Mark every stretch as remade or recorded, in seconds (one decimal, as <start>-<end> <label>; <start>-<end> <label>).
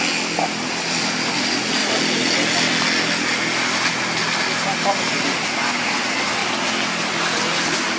0.0-8.0 recorded